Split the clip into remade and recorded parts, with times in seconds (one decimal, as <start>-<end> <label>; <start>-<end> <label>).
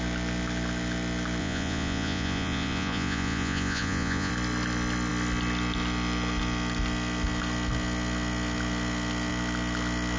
0.0-1.4 recorded; 1.4-4.3 remade; 4.3-10.2 recorded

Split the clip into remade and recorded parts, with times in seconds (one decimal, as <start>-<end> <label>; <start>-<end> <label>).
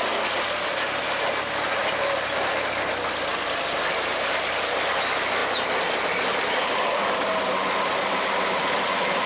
0.0-9.3 recorded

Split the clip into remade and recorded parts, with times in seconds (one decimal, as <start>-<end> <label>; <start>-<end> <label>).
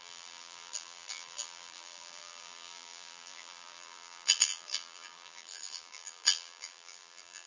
0.0-7.5 remade